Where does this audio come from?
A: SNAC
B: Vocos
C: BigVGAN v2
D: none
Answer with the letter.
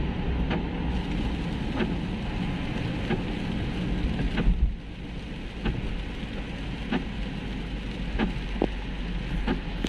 D